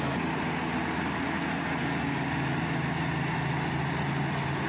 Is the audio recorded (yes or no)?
yes